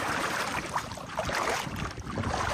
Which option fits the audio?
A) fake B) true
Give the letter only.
A